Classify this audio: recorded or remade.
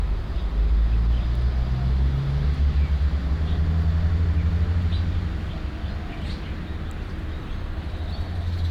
recorded